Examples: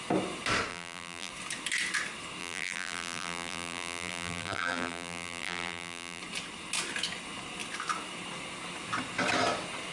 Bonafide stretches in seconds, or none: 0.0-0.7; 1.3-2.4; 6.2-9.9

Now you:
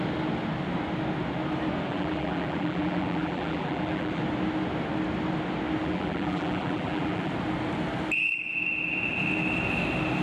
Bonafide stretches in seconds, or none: 0.0-1.9; 4.2-5.8; 7.3-10.2

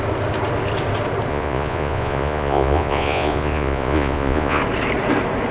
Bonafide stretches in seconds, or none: 0.0-1.3; 4.6-5.5

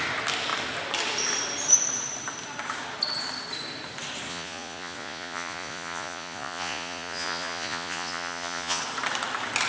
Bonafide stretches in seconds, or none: 0.0-4.3; 8.8-9.7

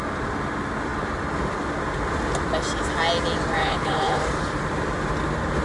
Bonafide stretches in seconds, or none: 0.0-3.6; 4.2-5.6

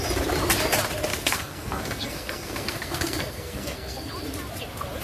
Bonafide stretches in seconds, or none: 0.0-1.1; 4.1-5.0

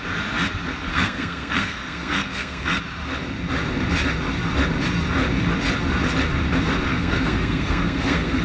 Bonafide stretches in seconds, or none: 0.0-0.9; 2.8-6.9

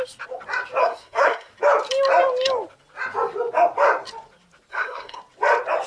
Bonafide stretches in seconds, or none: 0.0-0.8; 1.5-4.7; 5.2-5.9